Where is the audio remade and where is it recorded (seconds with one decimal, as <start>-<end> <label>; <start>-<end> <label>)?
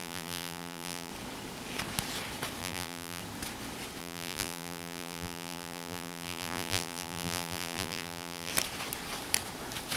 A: 0.0-1.1 remade; 1.1-2.6 recorded; 2.6-3.2 remade; 3.2-4.0 recorded; 4.0-8.5 remade; 8.5-10.0 recorded